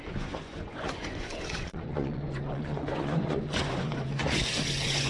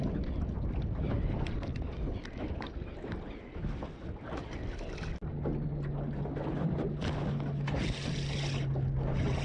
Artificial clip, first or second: first